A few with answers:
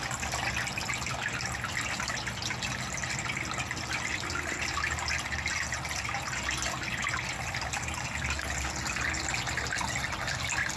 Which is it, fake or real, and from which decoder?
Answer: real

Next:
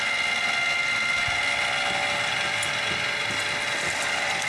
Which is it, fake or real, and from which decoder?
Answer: real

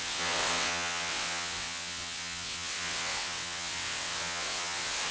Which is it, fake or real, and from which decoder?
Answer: fake, vocoder, WaveNeXt